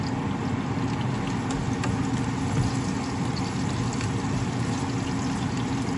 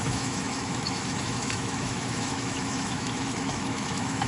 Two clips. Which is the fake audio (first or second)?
second